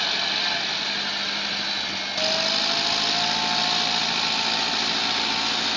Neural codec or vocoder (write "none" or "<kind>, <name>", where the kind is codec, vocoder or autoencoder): none